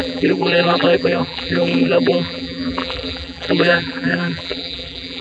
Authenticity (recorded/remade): remade